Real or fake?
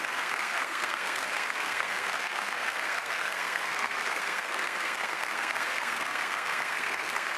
fake